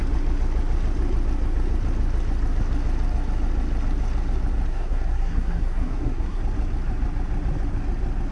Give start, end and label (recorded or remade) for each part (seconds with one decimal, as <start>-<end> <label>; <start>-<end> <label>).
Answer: 0.0-4.7 recorded; 4.7-6.4 remade; 6.4-8.3 recorded